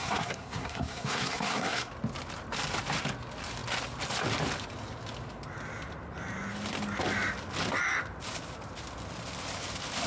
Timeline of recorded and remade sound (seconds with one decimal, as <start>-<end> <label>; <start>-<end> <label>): 0.0-1.9 remade; 1.9-10.1 recorded